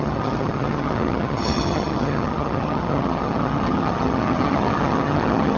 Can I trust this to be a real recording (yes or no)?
no